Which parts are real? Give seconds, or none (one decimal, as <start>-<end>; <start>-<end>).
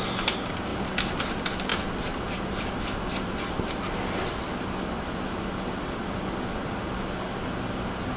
0.0-8.2